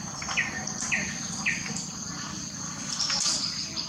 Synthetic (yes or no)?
no